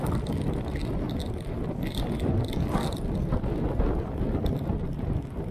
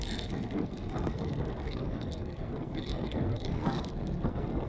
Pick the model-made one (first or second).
second